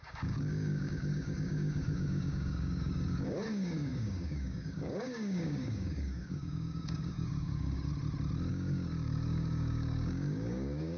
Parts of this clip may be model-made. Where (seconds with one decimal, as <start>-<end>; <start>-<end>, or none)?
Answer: 0.0-7.9; 8.5-11.0